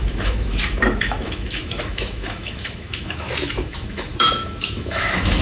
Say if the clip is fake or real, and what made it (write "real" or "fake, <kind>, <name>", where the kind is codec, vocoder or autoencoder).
fake, autoencoder, DAC-VAE